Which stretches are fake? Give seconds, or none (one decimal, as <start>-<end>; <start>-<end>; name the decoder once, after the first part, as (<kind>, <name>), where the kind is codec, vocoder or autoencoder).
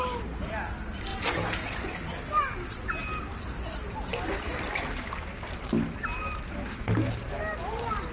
1.1-1.8 (vocoder, Vocos)